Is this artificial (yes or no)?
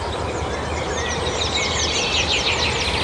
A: no